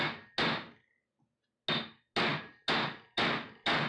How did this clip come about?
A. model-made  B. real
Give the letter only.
B